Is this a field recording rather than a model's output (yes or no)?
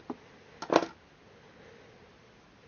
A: yes